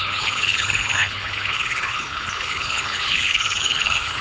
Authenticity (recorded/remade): remade